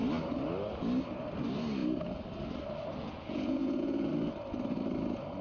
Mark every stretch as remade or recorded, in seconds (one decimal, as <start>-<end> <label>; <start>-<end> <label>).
0.0-3.0 recorded; 3.0-4.1 remade; 4.1-5.4 recorded

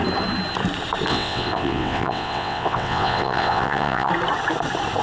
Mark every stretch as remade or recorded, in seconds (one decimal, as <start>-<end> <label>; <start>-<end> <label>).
0.0-1.1 recorded; 1.1-4.1 remade; 4.1-5.0 recorded

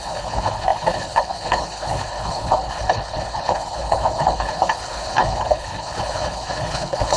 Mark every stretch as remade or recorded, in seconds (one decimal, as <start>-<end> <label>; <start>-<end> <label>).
0.0-7.2 remade

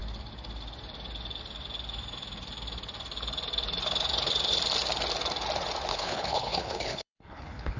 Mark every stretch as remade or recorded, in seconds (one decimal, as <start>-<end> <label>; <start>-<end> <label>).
0.0-5.9 recorded; 5.9-7.8 remade

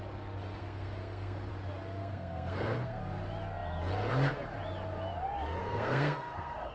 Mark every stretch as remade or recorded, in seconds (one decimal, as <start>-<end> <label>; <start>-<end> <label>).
0.0-0.6 recorded; 0.6-1.5 remade; 1.5-2.0 recorded; 2.0-3.0 remade; 3.0-5.6 recorded; 5.6-6.7 remade